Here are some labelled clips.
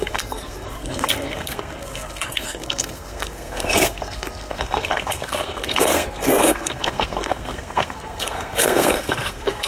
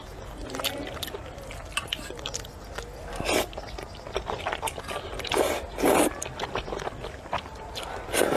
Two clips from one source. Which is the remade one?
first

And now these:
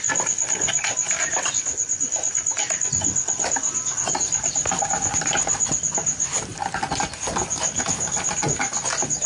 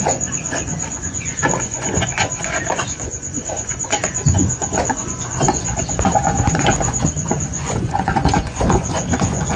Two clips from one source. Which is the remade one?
second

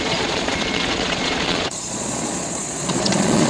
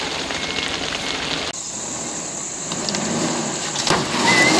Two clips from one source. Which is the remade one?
first